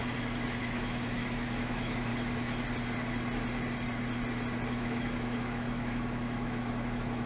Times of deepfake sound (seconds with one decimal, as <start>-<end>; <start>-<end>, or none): 0.6-2.1; 4.7-7.3